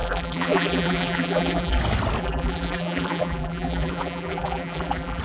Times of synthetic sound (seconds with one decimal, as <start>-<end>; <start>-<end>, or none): 0.0-1.8; 2.2-5.2